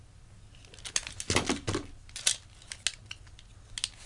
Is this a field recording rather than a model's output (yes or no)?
yes